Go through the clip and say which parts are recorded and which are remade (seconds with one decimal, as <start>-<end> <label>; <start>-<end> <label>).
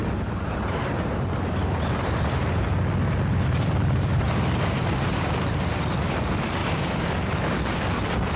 0.0-1.1 remade; 1.1-1.6 recorded; 1.6-2.8 remade; 2.8-3.3 recorded; 3.3-5.7 remade; 5.7-6.6 recorded; 6.6-7.3 remade; 7.3-8.4 recorded